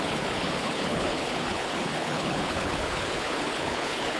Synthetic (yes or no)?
yes